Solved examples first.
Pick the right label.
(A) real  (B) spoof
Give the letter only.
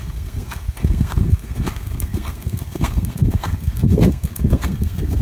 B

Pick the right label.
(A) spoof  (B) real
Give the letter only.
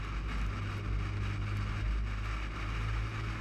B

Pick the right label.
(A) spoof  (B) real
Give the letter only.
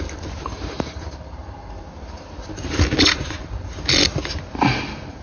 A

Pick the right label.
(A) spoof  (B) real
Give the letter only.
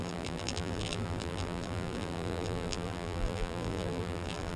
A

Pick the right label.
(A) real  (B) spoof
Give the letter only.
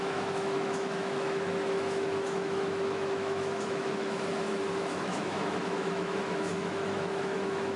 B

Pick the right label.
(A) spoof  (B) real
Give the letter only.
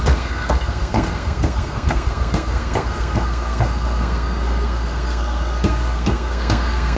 A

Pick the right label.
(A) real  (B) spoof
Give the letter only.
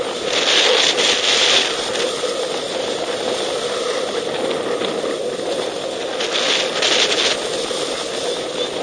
A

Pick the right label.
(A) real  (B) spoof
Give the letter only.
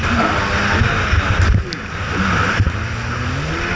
A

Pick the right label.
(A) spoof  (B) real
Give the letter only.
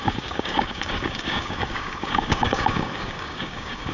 A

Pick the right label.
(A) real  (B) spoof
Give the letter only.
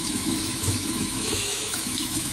B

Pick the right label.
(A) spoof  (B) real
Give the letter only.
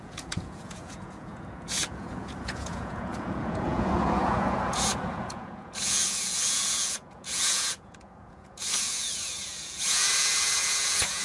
A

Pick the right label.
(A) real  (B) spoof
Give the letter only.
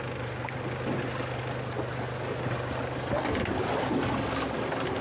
A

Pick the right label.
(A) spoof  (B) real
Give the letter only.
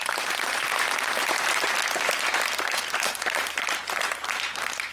A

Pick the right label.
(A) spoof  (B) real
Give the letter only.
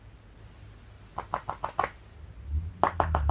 B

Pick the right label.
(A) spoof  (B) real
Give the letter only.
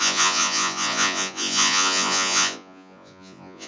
A